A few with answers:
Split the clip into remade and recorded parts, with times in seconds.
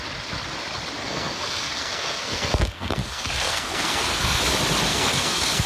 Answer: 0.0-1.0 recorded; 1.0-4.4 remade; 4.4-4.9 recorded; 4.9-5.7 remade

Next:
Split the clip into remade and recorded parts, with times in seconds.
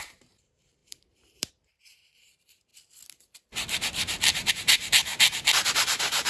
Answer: 0.0-2.7 remade; 2.7-4.5 recorded; 4.5-5.1 remade; 5.1-5.7 recorded; 5.7-6.3 remade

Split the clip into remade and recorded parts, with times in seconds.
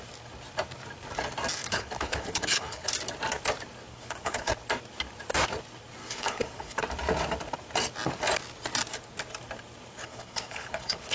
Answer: 0.0-1.6 recorded; 1.6-2.9 remade; 2.9-3.9 recorded; 3.9-4.5 remade; 4.5-6.0 recorded; 6.0-6.8 remade; 6.8-10.0 recorded; 10.0-11.1 remade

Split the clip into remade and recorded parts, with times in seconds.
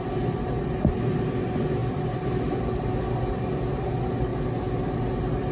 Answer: 0.0-5.5 recorded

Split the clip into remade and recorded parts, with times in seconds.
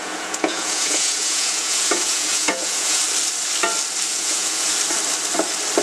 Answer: 0.0-3.0 remade; 3.0-4.1 recorded; 4.1-4.7 remade; 4.7-5.8 recorded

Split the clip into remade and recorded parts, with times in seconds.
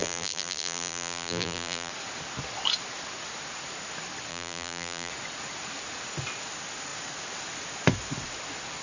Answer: 0.0-1.9 remade; 1.9-4.3 recorded; 4.3-5.1 remade; 5.1-8.8 recorded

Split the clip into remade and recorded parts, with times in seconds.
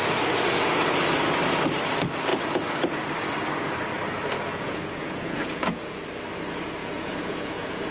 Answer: 0.0-4.5 recorded; 4.5-6.0 remade; 6.0-6.8 recorded; 6.8-7.9 remade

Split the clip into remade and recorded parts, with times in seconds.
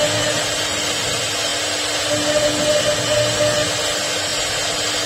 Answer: 0.0-5.1 recorded